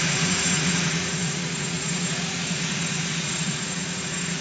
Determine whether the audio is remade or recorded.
remade